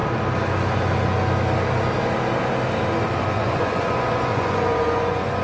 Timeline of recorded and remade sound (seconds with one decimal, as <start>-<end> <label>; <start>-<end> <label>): 0.0-3.2 recorded; 3.2-5.4 remade